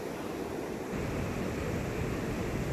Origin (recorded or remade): recorded